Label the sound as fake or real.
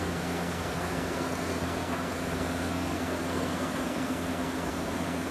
fake